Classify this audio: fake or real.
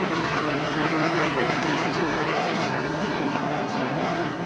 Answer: fake